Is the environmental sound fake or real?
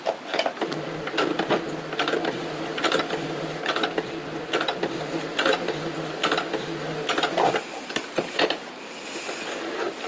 real